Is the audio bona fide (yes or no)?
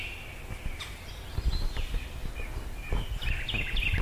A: yes